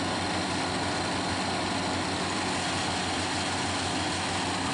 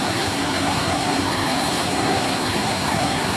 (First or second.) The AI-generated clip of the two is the second